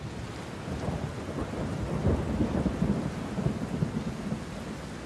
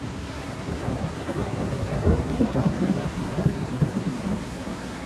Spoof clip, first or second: second